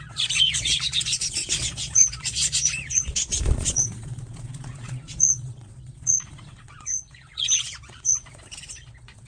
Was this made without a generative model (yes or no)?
no